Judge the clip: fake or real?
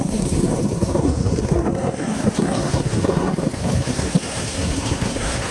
fake